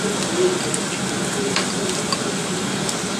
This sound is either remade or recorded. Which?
recorded